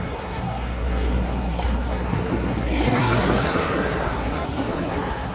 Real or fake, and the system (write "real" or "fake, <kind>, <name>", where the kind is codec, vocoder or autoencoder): fake, codec, SNAC